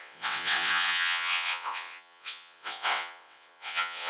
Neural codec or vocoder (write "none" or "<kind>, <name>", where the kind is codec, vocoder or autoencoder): vocoder, WaveNeXt